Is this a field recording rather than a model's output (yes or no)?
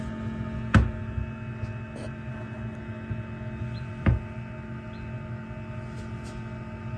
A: yes